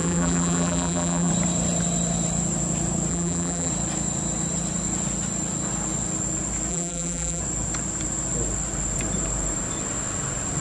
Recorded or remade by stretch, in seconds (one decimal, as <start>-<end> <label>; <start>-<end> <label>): 0.0-1.3 remade; 1.3-3.1 recorded; 3.1-3.7 remade; 3.7-6.7 recorded; 6.7-7.4 remade; 7.4-10.6 recorded